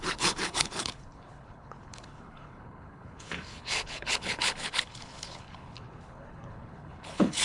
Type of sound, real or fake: fake